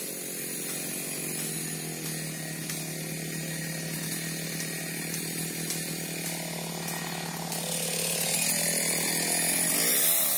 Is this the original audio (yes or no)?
yes